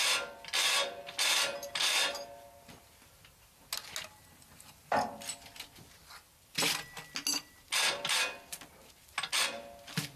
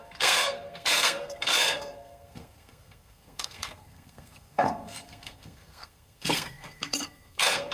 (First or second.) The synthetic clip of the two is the second